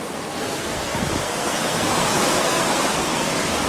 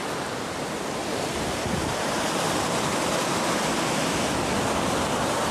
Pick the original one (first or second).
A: second